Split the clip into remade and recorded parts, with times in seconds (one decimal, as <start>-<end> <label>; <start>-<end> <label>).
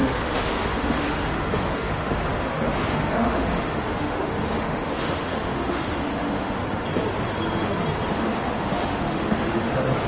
0.0-6.6 remade; 6.6-8.1 recorded; 8.1-10.1 remade